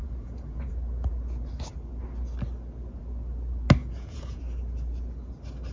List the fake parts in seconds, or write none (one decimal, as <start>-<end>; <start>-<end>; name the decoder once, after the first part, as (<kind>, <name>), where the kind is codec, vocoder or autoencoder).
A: 0.0-0.7 (vocoder, Vocos); 3.8-4.4